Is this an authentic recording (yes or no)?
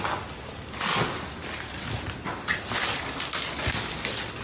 yes